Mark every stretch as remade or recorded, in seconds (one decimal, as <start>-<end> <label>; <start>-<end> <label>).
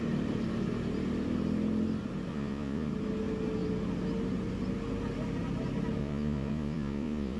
0.0-2.3 recorded; 2.3-2.9 remade; 2.9-6.0 recorded; 6.0-7.4 remade